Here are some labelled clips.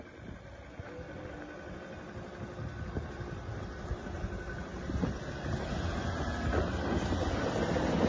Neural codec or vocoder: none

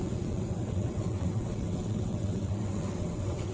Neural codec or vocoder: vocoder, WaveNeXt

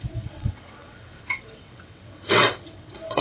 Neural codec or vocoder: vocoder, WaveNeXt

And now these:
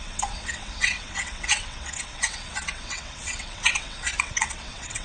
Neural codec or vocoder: vocoder, WaveNeXt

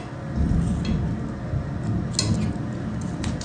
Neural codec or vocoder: none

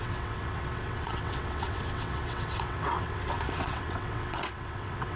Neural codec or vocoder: vocoder, WaveNeXt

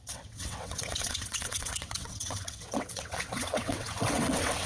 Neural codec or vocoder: vocoder, WaveNeXt